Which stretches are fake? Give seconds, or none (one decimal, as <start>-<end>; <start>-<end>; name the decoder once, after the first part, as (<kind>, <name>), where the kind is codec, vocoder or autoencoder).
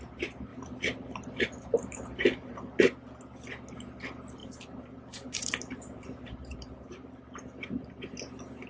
0.5-2.8 (vocoder, BigVGAN v2); 4.4-7.9